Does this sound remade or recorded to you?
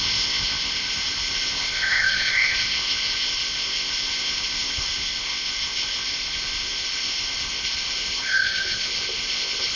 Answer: remade